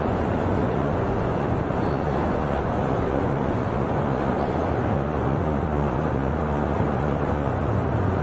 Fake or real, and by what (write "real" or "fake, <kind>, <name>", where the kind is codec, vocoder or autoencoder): fake, vocoder, Vocos